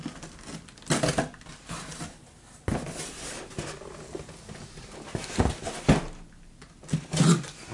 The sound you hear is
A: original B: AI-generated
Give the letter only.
A